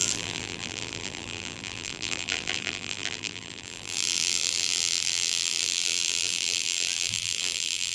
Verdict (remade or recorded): remade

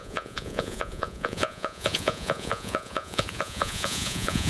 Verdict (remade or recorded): remade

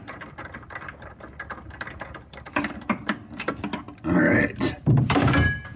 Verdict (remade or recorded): recorded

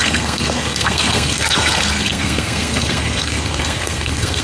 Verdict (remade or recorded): remade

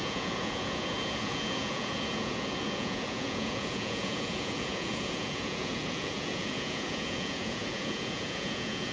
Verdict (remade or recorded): remade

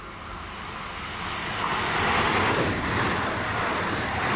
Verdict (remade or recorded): recorded